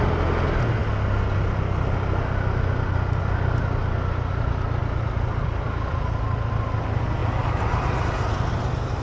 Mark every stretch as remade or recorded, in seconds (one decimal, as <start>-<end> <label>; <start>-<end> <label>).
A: 0.0-9.0 recorded